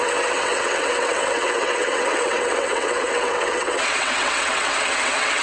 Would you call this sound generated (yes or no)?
yes